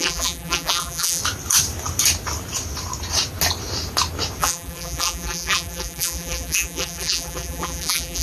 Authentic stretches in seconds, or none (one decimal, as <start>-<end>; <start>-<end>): 1.2-4.4